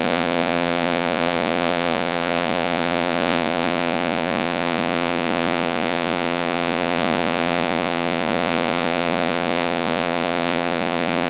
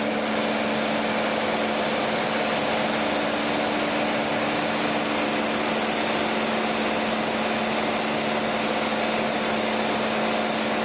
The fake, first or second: first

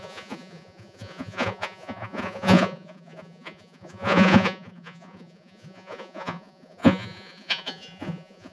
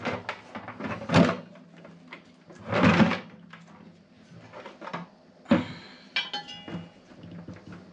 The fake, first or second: first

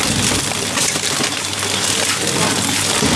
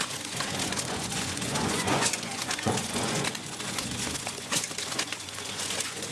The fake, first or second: second